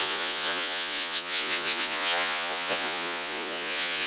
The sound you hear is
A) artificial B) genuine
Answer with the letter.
A